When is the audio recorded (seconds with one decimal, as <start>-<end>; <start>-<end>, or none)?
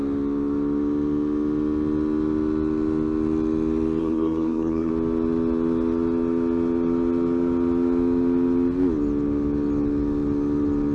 0.0-4.0; 4.9-10.9